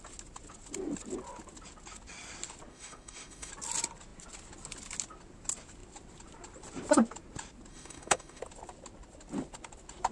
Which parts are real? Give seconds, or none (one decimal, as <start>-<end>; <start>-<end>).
0.0-2.7; 3.5-7.7; 8.4-10.1